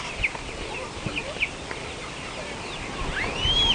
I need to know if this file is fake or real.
real